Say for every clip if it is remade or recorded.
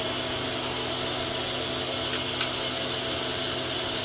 recorded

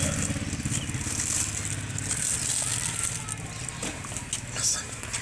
recorded